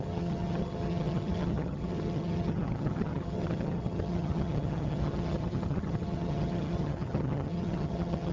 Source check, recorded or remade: remade